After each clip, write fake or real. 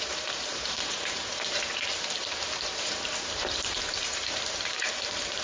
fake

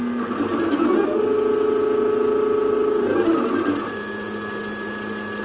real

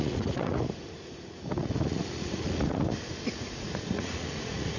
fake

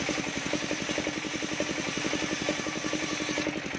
fake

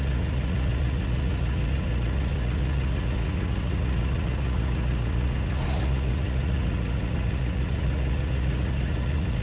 fake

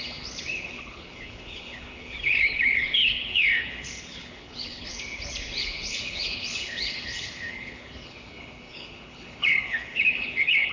fake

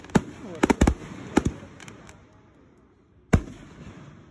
real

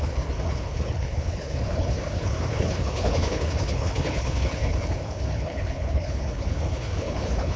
fake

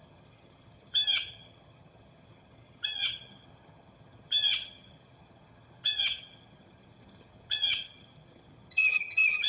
fake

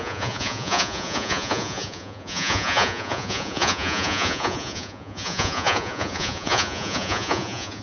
fake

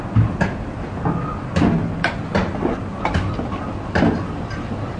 real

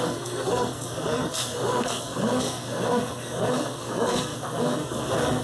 fake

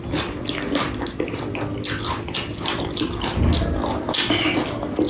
real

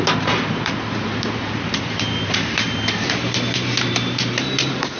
fake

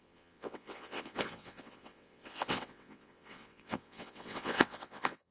fake